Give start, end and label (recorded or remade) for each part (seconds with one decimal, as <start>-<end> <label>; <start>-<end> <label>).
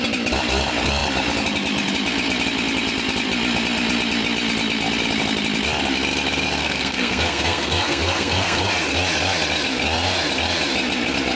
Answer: 0.0-6.6 recorded; 6.6-8.7 remade; 8.7-11.4 recorded